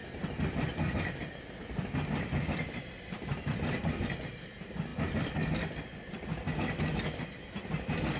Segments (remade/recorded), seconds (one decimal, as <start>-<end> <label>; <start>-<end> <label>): 0.0-4.5 remade; 4.5-4.9 recorded; 4.9-6.5 remade; 6.5-8.2 recorded